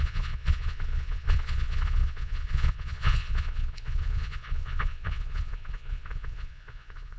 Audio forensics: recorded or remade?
remade